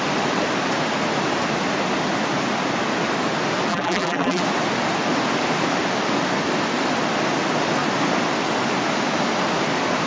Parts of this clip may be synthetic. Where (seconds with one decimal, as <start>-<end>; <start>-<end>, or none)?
3.7-4.4